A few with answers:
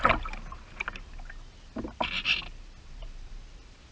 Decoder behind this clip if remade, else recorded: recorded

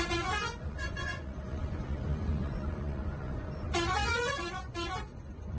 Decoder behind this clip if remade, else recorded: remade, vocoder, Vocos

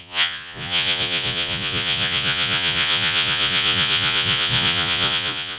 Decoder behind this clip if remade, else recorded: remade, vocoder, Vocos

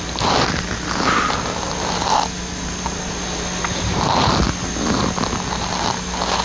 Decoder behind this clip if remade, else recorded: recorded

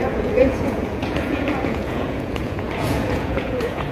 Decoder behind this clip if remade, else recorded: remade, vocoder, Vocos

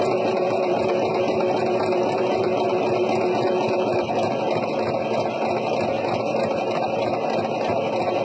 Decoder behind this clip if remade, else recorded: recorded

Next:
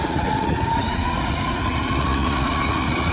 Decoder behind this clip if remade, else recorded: remade, vocoder, Vocos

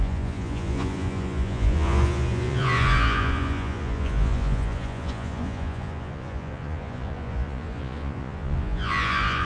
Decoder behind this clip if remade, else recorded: remade, vocoder, Vocos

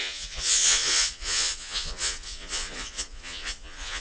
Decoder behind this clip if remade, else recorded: remade, vocoder, Vocos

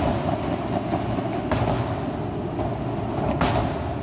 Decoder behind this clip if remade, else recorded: recorded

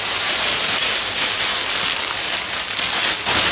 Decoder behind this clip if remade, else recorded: recorded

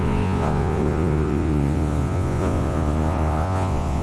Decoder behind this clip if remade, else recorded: remade, vocoder, Vocos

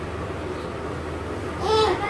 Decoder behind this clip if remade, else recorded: recorded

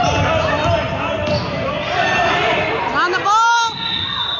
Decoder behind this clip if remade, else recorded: recorded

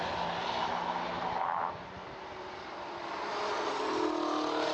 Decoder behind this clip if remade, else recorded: recorded